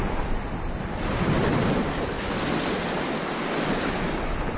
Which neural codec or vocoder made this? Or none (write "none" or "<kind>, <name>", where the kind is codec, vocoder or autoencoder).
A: none